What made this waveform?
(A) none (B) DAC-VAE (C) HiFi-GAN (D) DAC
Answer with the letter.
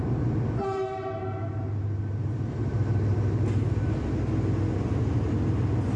A